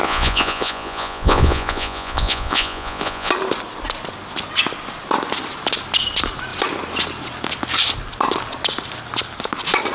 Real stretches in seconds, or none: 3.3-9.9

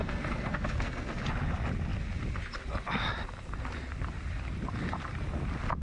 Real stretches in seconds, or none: 1.2-5.8